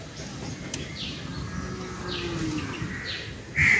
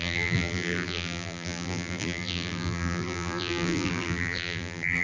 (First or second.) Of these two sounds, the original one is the first